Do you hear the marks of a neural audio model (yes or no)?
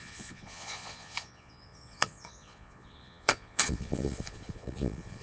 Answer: yes